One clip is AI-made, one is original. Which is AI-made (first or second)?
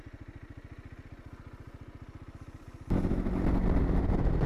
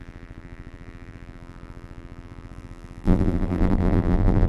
second